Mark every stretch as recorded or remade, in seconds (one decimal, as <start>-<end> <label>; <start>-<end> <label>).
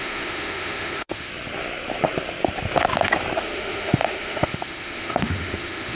0.0-1.3 remade; 1.3-3.4 recorded; 3.4-5.9 remade